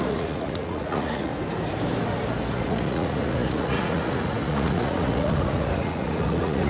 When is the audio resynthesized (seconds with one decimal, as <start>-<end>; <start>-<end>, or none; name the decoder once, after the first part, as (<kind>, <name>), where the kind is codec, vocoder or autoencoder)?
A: 0.0-1.3 (vocoder, Vocos); 2.5-6.7